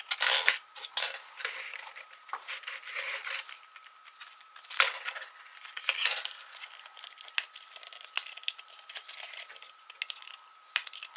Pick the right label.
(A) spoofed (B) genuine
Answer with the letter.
B